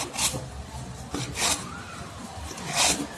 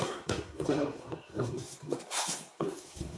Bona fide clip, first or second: first